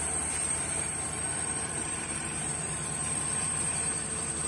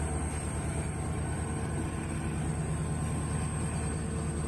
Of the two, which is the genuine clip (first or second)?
second